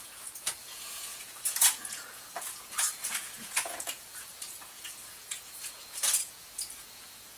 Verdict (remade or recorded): remade